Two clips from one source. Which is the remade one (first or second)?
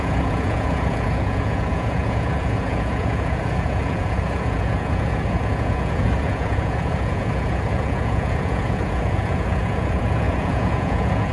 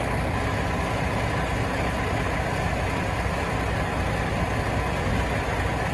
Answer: first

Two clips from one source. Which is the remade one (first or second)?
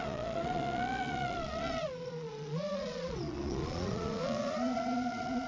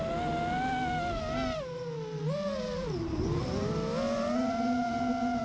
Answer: first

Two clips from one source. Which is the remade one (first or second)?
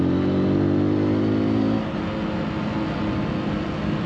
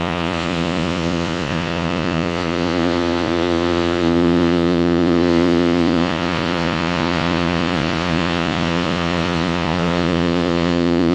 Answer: second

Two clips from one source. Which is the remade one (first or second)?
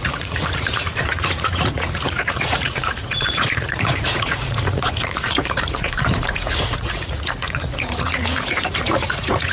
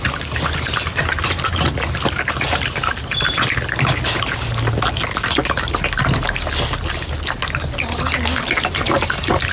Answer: first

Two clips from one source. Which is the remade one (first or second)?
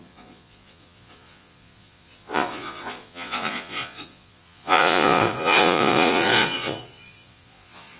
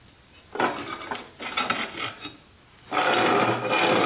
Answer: first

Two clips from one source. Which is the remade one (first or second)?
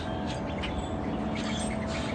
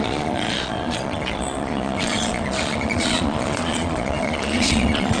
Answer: second